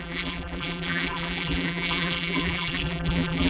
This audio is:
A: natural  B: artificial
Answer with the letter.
B